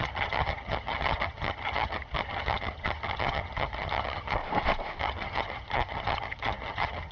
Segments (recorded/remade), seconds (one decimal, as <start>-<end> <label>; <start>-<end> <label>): 0.0-4.4 remade; 4.4-5.0 recorded; 5.0-7.1 remade